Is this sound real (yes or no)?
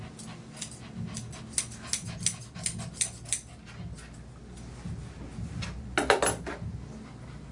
yes